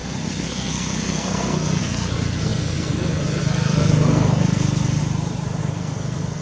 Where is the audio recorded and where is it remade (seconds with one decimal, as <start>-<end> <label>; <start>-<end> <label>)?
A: 0.0-5.0 remade; 5.0-5.6 recorded; 5.6-6.4 remade